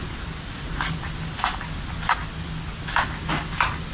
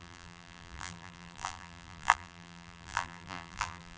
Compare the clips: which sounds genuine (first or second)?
first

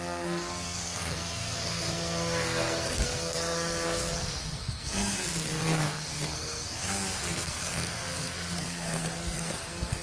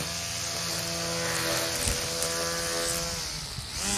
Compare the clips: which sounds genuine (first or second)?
second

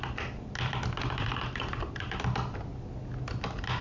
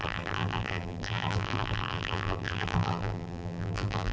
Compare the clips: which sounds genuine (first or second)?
first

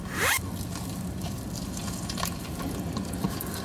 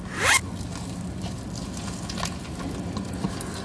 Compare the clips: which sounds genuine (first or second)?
second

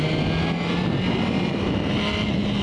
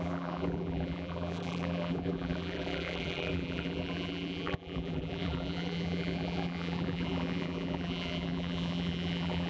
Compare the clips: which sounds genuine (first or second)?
first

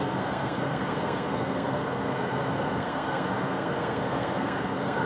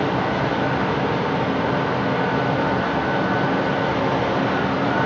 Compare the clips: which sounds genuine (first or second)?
second